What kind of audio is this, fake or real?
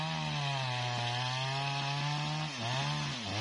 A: real